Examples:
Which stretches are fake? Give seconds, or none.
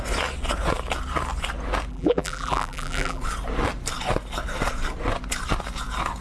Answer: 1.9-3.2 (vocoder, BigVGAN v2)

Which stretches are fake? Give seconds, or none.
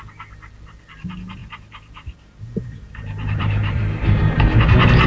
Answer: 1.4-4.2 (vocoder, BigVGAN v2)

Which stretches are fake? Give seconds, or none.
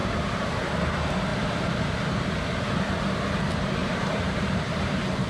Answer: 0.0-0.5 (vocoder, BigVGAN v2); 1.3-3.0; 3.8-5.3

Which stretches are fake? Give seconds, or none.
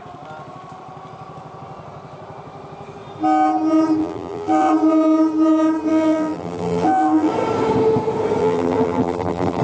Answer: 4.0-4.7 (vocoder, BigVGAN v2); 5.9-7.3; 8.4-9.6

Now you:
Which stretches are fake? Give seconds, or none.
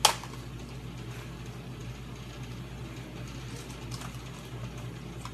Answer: none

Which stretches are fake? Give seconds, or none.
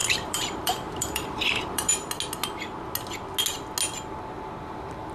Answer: 0.0-1.9 (vocoder, BigVGAN v2)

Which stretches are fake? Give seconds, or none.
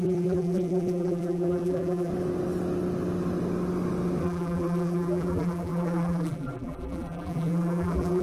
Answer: 0.0-2.1 (vocoder, BigVGAN v2); 4.2-8.2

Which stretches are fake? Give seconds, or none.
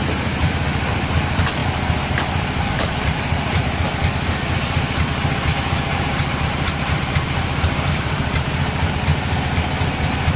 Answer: 0.0-4.0 (vocoder, BigVGAN v2); 5.9-9.1; 10.0-10.4